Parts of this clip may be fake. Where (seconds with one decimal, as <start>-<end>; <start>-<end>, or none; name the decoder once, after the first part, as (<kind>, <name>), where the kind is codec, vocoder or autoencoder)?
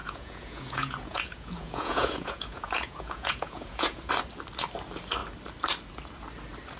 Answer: 0.0-4.1 (vocoder, Vocos)